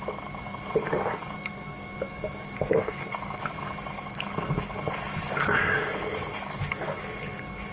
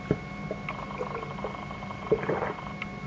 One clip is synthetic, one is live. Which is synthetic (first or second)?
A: first